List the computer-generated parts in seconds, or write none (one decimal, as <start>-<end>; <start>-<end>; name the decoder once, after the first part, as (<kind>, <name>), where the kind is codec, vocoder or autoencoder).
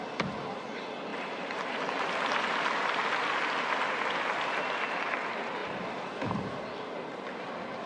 5.6-6.6 (vocoder, BigVGAN v2)